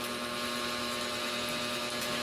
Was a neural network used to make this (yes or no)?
yes